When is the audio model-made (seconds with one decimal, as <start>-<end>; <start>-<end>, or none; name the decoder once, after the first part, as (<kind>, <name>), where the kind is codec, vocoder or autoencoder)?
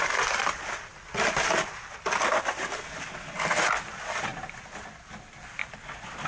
none